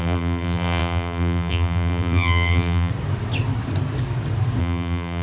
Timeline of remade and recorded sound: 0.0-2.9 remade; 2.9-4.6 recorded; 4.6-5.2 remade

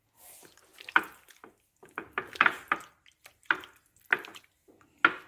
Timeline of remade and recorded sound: 0.0-4.3 recorded; 4.3-5.3 remade

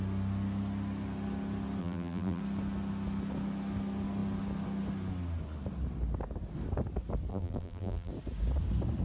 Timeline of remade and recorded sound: 0.0-1.8 recorded; 1.8-2.4 remade; 2.4-7.3 recorded; 7.3-8.1 remade; 8.1-9.0 recorded

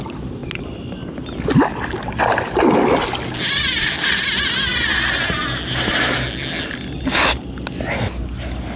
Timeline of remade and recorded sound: 0.0-8.8 recorded

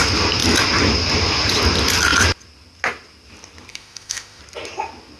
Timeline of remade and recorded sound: 0.0-3.7 recorded; 3.7-4.4 remade; 4.4-5.2 recorded

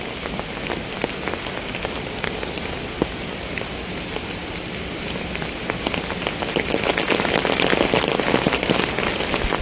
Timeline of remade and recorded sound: 0.0-4.4 recorded; 4.4-5.5 remade; 5.5-9.6 recorded